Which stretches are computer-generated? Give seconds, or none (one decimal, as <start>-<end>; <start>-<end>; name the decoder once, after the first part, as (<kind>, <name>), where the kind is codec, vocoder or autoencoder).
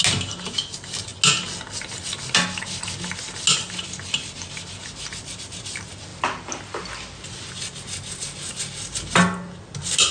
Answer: none